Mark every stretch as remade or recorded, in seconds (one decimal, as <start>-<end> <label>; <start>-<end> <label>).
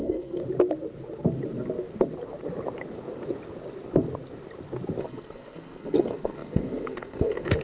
0.0-0.4 remade; 0.4-5.0 recorded; 5.0-7.6 remade